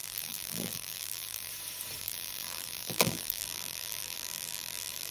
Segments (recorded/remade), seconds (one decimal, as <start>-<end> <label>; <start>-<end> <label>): 0.0-1.5 remade; 1.5-2.0 recorded; 2.0-5.1 remade

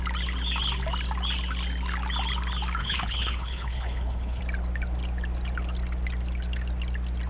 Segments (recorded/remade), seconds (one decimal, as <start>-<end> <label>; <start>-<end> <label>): 0.0-2.8 recorded; 2.8-4.4 remade; 4.4-7.3 recorded

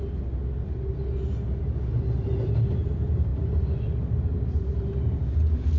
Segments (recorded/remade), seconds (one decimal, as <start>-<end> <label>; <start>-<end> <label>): 0.0-1.9 recorded; 1.9-2.8 remade; 2.8-5.8 recorded

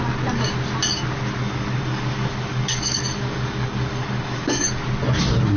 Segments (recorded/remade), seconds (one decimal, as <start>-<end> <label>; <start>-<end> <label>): 0.0-1.4 recorded; 1.4-4.8 remade; 4.8-5.6 recorded